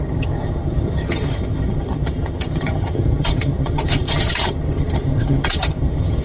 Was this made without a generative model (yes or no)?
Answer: no